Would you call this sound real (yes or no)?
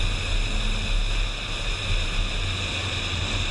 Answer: yes